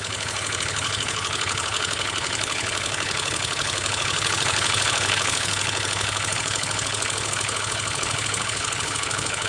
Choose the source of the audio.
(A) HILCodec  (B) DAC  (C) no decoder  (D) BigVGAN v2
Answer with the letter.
A